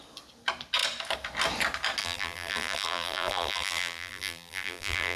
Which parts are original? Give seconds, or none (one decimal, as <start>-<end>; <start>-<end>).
0.0-2.0